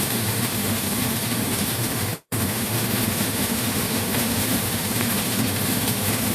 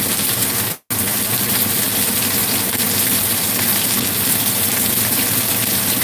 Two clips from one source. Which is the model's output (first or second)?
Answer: first